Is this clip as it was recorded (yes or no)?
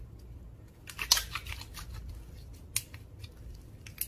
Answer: yes